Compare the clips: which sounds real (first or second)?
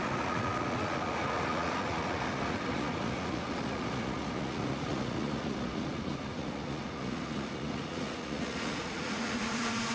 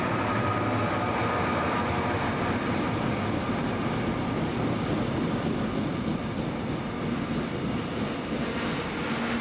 second